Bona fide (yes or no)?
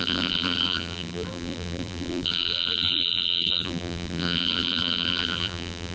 no